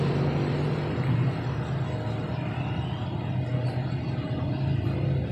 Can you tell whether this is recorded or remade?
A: recorded